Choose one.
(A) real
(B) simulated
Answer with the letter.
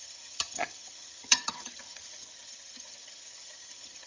B